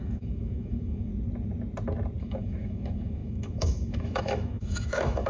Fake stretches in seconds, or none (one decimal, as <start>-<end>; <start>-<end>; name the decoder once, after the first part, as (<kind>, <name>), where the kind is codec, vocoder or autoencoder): 0.0-1.1 (autoencoder, DAC-VAE); 2.2-5.3

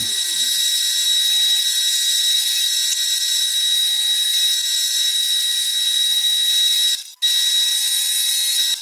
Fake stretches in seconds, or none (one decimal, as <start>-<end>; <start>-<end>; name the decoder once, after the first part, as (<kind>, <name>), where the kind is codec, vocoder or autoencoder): none

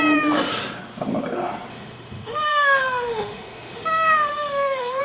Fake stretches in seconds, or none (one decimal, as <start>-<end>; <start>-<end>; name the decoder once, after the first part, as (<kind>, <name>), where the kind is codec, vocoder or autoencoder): 1.7-5.0 (autoencoder, DAC-VAE)

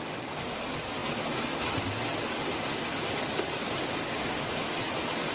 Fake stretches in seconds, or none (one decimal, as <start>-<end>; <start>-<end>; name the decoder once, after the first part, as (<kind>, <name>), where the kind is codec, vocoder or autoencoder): none

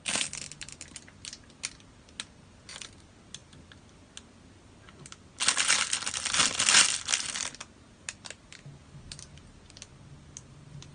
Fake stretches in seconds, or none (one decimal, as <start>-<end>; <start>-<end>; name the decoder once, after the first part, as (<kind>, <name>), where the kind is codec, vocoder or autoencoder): none

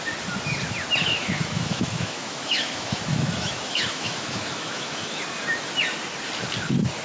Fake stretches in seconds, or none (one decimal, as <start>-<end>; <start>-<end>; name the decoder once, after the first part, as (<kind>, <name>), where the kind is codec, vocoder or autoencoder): 1.0-5.2 (autoencoder, DAC-VAE)

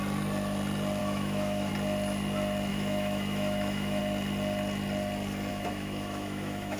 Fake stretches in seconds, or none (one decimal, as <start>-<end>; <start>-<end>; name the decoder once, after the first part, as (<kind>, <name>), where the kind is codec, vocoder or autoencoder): 1.0-1.7 (autoencoder, DAC-VAE); 2.7-4.0; 5.5-6.8